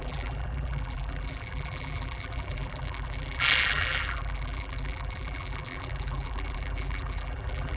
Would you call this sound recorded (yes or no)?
no